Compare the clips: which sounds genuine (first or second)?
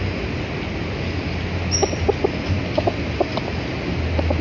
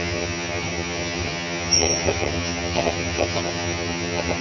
first